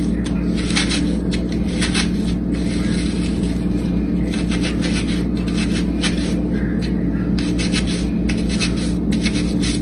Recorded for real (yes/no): yes